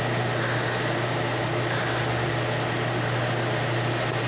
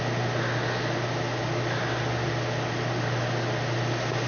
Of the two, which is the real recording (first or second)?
second